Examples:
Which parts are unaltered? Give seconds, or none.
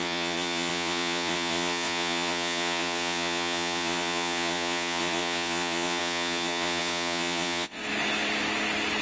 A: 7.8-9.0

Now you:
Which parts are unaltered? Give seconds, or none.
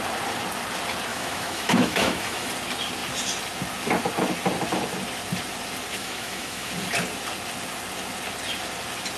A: 0.0-1.1; 2.5-6.0; 6.7-9.2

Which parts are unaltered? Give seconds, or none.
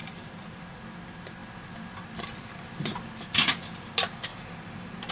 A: 0.6-4.3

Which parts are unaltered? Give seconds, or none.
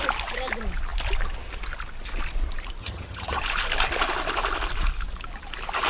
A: 0.0-2.8; 3.4-5.9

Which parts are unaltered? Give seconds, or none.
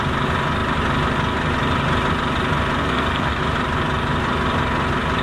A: 0.0-2.8; 3.4-5.2